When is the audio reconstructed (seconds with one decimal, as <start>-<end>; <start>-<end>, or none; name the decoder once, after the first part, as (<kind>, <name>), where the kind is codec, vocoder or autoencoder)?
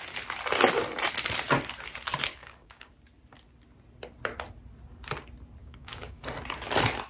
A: 2.3-2.9 (codec, DAC); 5.6-6.2